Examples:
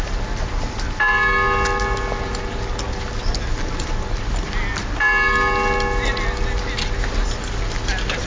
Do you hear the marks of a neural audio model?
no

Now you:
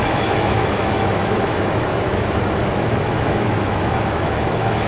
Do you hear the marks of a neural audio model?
yes